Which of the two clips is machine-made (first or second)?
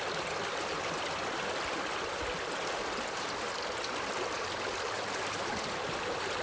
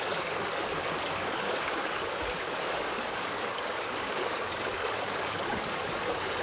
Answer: second